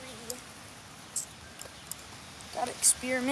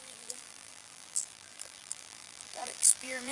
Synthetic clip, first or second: second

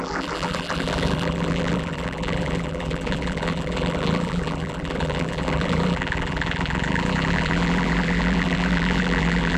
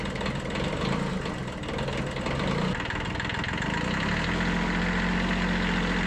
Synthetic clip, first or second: first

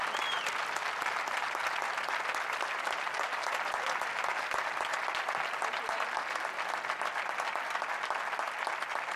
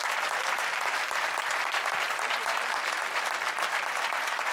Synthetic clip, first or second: second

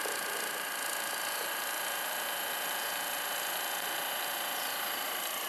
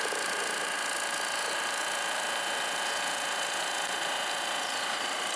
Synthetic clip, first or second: first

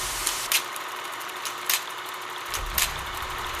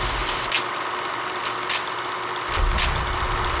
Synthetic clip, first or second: first